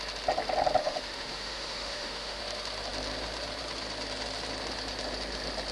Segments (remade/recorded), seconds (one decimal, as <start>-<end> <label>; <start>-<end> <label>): 0.0-0.8 recorded; 0.8-2.4 remade; 2.4-5.7 recorded